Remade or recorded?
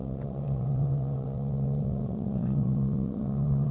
remade